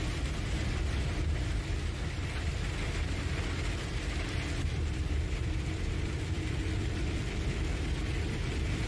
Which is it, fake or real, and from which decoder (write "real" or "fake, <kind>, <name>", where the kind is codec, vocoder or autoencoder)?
real